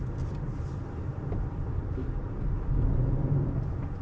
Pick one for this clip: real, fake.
real